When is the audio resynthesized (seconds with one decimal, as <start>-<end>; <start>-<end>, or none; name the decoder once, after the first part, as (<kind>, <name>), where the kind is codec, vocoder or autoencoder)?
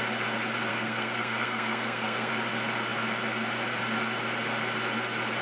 0.7-2.3 (codec, SNAC)